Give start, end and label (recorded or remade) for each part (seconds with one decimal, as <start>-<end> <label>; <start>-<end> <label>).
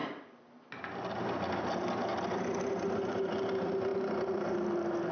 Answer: 0.0-5.1 recorded